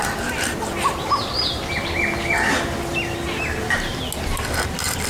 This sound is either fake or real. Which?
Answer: real